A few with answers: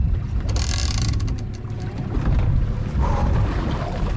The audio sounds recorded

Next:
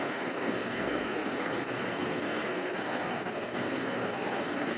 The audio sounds remade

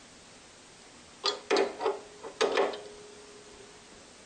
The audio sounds recorded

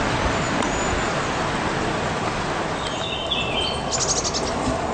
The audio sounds recorded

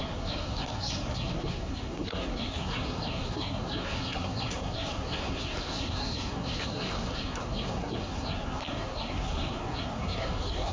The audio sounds remade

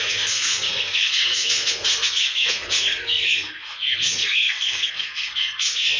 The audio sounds remade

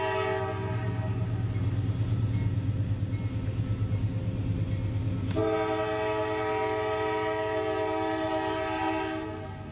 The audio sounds recorded